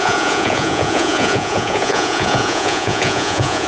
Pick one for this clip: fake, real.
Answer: fake